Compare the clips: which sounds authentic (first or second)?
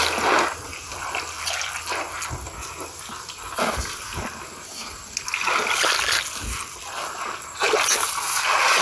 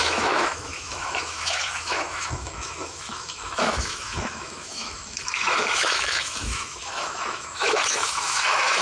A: first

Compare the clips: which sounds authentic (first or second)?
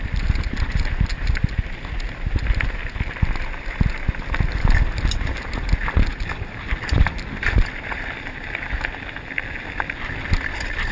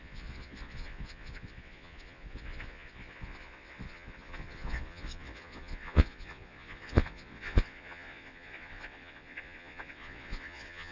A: first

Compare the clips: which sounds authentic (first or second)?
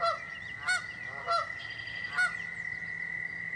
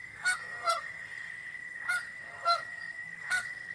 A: first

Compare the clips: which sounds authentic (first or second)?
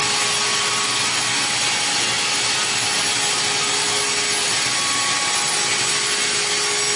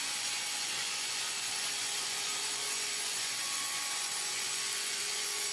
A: first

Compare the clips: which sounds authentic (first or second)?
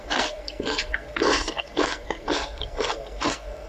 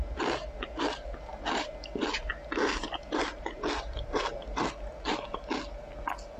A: second